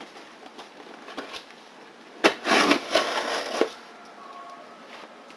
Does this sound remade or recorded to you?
recorded